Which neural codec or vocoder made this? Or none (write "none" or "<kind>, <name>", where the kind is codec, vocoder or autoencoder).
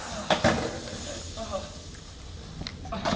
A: none